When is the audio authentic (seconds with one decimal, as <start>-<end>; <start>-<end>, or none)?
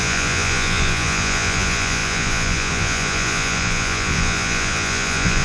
none